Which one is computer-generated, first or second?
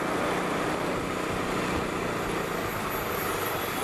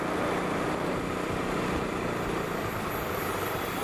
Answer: second